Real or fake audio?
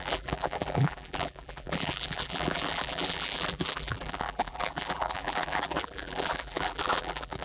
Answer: fake